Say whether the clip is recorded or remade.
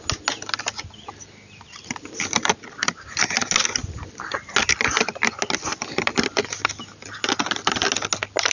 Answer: recorded